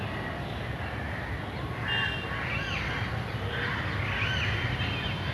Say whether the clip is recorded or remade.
recorded